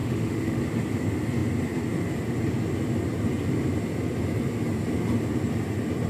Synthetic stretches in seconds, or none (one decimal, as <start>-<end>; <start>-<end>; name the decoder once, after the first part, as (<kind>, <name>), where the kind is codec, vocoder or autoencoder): 0.0-0.6 (autoencoder, DAC-VAE)